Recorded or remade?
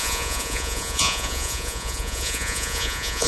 remade